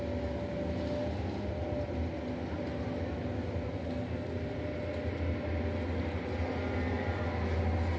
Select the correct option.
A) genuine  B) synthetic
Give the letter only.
A